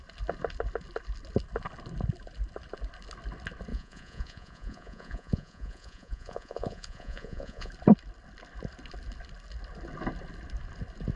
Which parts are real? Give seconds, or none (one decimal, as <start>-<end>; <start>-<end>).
0.0-3.7; 7.7-11.2